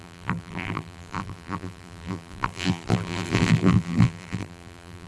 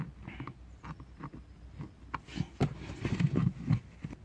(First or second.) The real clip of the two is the second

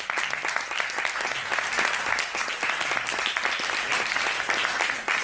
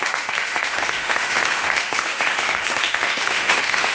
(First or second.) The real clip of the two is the first